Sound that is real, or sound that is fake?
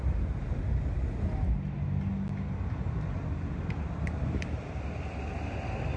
real